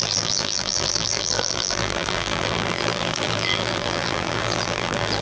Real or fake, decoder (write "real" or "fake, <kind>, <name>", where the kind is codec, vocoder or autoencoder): fake, vocoder, BigVGAN v2